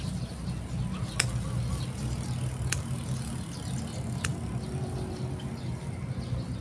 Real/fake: real